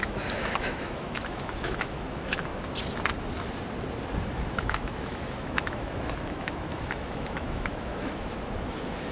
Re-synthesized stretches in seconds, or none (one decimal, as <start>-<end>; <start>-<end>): 0.0-2.5; 4.3-9.1